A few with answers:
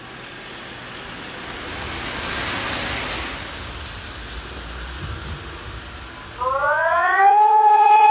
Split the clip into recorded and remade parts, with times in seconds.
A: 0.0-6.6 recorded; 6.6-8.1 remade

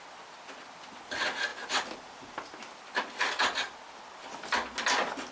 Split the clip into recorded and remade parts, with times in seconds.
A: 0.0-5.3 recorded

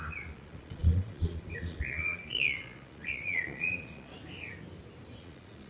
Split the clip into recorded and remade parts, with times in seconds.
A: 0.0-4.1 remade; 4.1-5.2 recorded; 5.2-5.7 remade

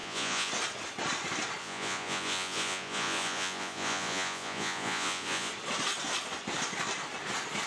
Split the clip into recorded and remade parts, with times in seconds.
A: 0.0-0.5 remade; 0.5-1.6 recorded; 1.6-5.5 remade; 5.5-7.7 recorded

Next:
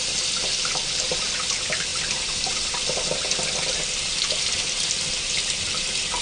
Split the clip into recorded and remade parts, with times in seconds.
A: 0.0-6.2 recorded

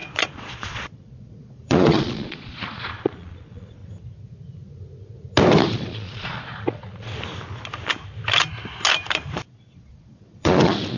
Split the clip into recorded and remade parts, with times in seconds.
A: 0.0-3.8 remade; 3.8-5.7 recorded; 5.7-7.1 remade; 7.1-9.5 recorded; 9.5-11.0 remade

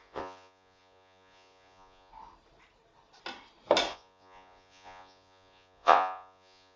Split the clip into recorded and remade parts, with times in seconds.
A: 0.0-2.1 remade; 2.1-3.9 recorded; 3.9-6.8 remade

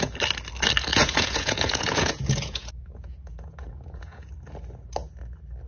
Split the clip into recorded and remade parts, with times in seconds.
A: 0.0-0.9 recorded; 0.9-4.3 remade; 4.3-5.7 recorded